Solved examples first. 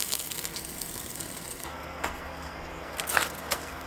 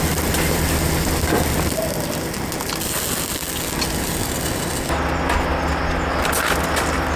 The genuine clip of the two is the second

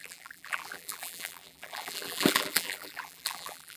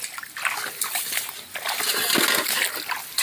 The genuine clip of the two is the second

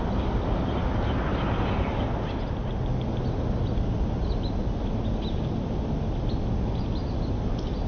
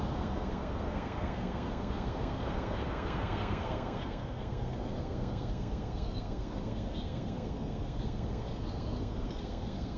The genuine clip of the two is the first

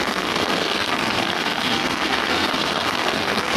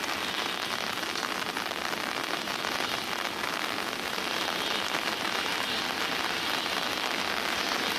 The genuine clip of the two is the second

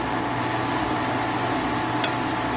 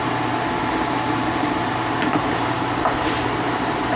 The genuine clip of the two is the first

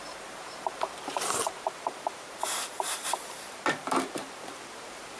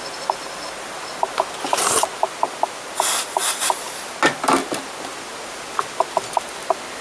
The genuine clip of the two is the second